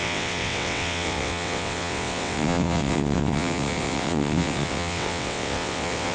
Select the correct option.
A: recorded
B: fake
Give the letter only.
B